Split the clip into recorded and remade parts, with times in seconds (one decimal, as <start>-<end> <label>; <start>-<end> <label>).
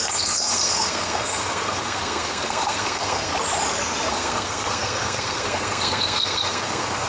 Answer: 0.0-3.3 remade; 3.3-4.1 recorded; 4.1-7.1 remade